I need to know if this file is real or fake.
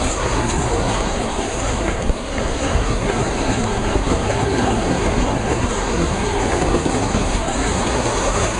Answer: fake